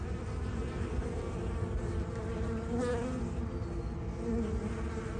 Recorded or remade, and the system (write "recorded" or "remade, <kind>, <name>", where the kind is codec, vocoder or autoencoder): recorded